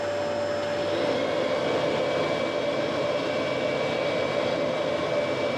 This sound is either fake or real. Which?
real